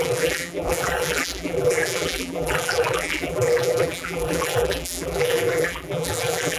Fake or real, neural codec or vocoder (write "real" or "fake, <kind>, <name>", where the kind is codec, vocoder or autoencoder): fake, vocoder, BigVGAN v2